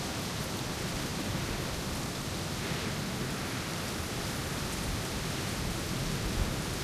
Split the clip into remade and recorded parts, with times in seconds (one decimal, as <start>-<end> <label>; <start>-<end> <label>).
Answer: 0.0-6.8 recorded